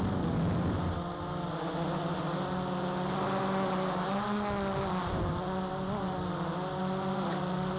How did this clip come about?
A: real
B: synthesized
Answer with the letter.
A